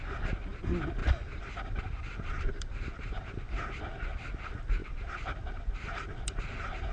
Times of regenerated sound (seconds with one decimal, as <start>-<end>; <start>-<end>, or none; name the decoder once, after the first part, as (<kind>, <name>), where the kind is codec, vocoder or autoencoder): 1.0-3.9 (vocoder, BigVGAN v2); 4.8-6.9